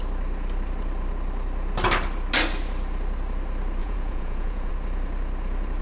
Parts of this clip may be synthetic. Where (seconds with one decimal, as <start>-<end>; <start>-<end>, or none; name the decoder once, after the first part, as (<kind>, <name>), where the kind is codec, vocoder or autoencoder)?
3.8-4.7 (vocoder, Vocos)